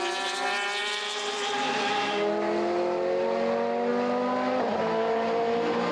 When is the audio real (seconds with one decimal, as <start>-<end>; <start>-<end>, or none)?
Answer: 0.0-0.8; 1.8-5.9